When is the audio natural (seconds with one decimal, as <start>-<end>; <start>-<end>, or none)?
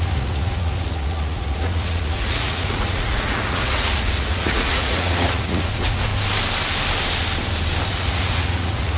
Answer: 6.1-7.9